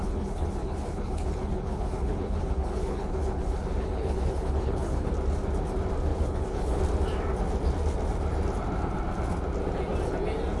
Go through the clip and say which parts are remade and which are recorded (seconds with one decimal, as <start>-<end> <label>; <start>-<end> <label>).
0.0-5.1 remade; 5.1-6.1 recorded; 6.1-6.8 remade; 6.8-10.6 recorded